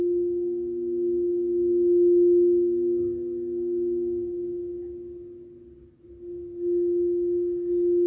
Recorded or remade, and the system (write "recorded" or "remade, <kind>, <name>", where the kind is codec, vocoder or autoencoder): recorded